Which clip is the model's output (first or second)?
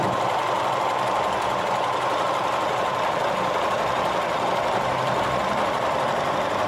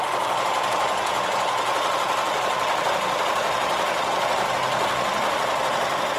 first